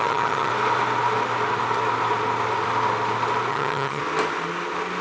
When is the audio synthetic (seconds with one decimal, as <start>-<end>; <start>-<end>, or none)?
0.0-0.5; 3.5-4.0